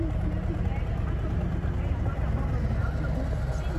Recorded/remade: recorded